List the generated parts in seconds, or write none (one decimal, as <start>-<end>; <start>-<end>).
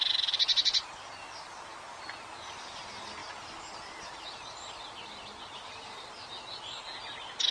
3.2-6.0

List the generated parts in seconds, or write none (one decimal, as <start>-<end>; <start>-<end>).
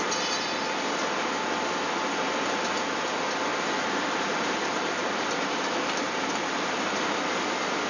3.5-6.3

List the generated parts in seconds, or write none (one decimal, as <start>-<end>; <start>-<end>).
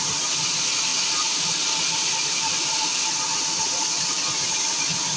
none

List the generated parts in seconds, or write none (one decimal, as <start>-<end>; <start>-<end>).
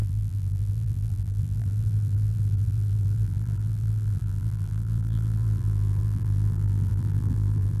0.0-7.8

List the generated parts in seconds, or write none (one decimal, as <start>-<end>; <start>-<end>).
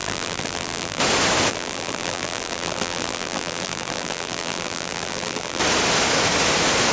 0.0-1.0; 1.5-5.6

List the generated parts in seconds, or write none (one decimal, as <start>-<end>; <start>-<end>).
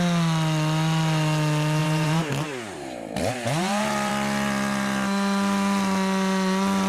1.8-4.1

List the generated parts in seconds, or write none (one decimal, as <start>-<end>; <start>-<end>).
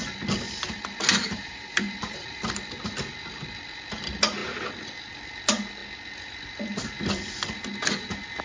1.1-2.4